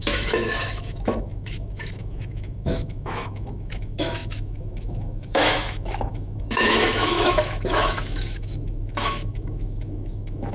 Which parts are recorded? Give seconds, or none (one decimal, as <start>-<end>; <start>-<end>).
none